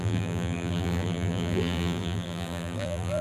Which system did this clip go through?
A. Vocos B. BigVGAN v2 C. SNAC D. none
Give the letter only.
B